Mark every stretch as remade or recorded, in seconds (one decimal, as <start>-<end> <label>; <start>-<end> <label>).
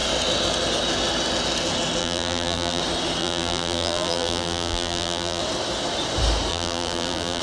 0.0-2.0 recorded; 2.0-2.8 remade; 2.8-3.2 recorded; 3.2-5.4 remade; 5.4-6.5 recorded; 6.5-7.4 remade